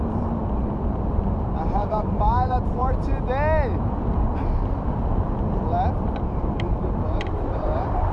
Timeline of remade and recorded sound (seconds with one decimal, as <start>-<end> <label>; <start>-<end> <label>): 0.0-0.4 remade; 0.4-1.1 recorded; 1.1-3.1 remade; 3.1-6.3 recorded; 6.3-8.1 remade